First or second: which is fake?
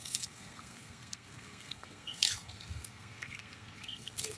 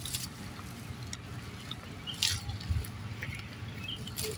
first